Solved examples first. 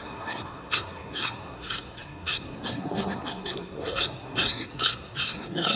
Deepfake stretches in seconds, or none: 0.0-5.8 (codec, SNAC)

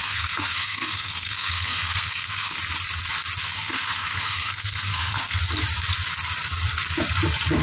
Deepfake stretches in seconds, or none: 0.0-2.6 (codec, SNAC); 3.4-5.4

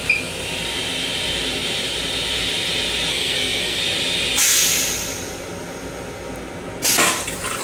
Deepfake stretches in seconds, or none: 3.1-3.8 (codec, SNAC)

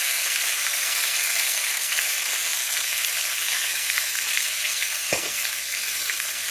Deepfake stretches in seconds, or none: 0.0-6.5 (codec, SNAC)